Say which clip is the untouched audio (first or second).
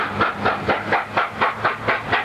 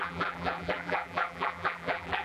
first